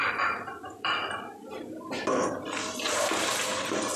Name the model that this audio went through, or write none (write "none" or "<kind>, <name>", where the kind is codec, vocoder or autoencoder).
vocoder, BigVGAN v2